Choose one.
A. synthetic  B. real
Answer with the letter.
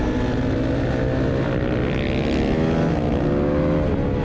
B